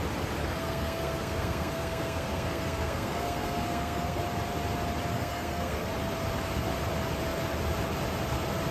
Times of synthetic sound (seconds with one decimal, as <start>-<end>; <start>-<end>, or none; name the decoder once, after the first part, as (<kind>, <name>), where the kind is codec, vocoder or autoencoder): 0.4-4.2 (codec, SNAC); 5.1-5.9